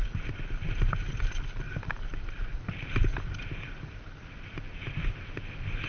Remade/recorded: recorded